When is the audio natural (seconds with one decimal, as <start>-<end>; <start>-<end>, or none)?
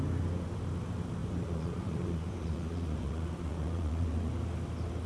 0.0-1.2; 4.3-5.1